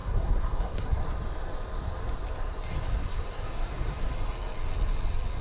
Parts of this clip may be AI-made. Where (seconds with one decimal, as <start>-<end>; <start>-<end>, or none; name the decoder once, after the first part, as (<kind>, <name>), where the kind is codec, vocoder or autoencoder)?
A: 0.0-1.0 (codec, SNAC); 3.0-4.1